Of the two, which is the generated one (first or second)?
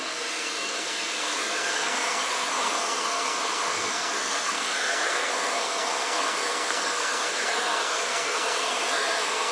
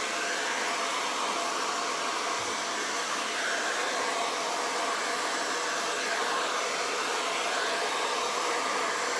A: first